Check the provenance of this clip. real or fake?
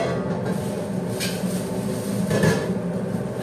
real